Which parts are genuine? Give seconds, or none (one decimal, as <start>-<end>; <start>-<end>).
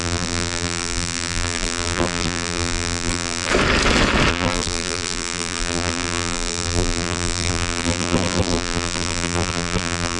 3.5-4.3